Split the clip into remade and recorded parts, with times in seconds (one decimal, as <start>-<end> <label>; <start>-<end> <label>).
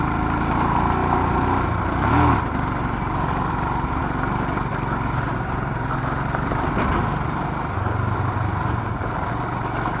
0.0-10.0 recorded